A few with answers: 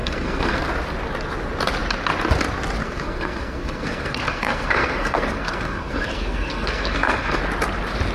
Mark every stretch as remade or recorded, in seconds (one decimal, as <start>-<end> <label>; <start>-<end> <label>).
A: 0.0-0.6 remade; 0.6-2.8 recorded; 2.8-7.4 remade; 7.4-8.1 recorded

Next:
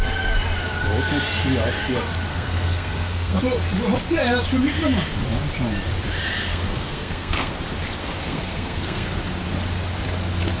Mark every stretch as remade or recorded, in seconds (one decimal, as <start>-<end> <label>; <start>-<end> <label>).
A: 0.0-2.3 recorded; 2.3-3.4 remade; 3.4-6.5 recorded; 6.5-7.5 remade; 7.5-8.0 recorded; 8.0-9.2 remade; 9.2-10.6 recorded

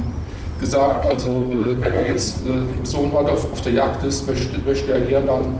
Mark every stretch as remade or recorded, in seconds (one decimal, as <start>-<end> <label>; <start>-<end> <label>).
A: 0.0-0.9 recorded; 0.9-2.4 remade; 2.4-5.6 recorded

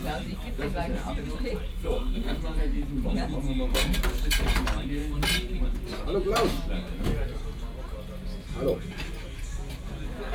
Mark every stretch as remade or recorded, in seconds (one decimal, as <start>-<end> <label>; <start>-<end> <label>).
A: 0.0-1.7 recorded; 1.7-2.4 remade; 2.4-10.3 recorded